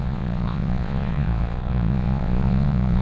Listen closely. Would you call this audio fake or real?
fake